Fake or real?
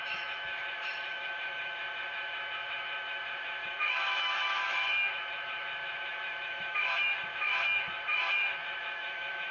fake